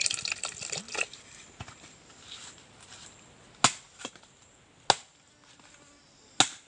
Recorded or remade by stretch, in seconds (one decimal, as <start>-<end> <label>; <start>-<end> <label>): 0.0-6.7 recorded